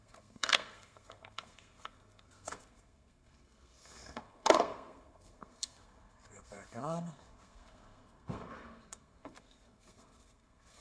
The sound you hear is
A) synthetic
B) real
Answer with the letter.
A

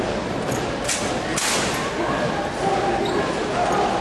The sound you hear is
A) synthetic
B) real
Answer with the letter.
B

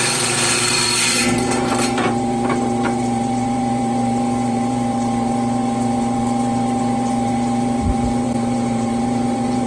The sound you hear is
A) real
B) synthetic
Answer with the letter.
B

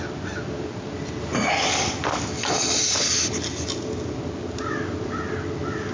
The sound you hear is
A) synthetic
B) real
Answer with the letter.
B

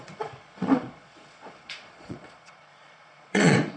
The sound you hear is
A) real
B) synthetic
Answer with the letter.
B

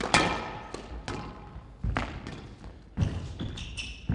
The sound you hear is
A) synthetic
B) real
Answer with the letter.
B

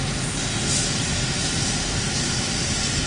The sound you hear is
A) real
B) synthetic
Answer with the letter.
A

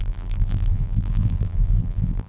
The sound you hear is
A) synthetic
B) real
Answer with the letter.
A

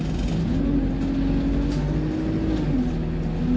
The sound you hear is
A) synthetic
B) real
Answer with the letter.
B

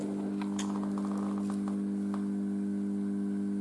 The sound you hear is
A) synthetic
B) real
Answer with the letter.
B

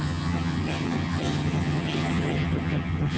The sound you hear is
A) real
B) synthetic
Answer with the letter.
B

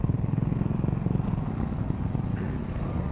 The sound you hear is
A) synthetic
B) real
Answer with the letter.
B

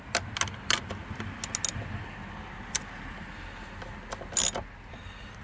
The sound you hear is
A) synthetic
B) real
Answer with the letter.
B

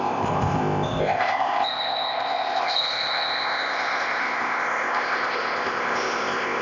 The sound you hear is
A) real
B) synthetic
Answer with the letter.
B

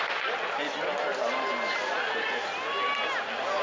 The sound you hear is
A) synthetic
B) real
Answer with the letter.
B